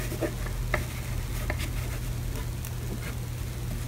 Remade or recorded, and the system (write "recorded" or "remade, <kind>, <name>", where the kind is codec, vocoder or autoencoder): recorded